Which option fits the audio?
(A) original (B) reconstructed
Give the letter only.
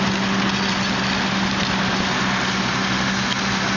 A